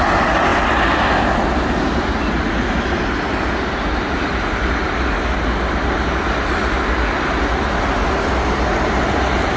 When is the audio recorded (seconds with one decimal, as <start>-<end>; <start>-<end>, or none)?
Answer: 0.0-9.6